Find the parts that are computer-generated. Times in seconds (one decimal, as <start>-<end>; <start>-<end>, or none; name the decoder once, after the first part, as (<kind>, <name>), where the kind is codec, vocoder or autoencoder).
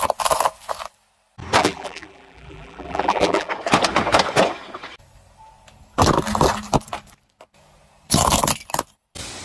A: 1.6-3.5 (vocoder, BigVGAN v2)